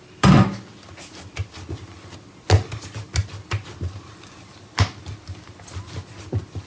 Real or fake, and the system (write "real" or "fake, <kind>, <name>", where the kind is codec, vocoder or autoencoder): real